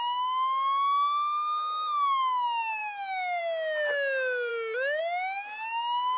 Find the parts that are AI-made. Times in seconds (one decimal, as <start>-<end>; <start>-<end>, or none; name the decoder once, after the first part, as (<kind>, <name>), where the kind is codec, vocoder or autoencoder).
none